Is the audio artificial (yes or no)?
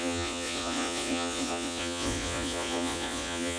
yes